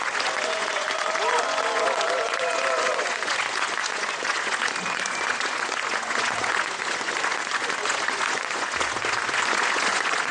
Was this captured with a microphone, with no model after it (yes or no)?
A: no